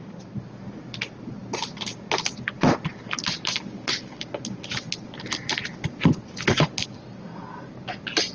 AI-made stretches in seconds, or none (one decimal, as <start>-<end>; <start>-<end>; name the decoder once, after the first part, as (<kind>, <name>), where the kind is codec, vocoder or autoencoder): none